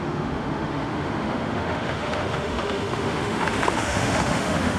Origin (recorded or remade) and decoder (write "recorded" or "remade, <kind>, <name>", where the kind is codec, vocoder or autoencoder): remade, autoencoder, DAC-VAE